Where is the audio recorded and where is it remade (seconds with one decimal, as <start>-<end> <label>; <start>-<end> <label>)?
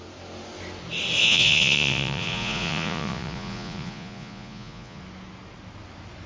0.0-1.2 recorded; 1.2-5.0 remade; 5.0-6.3 recorded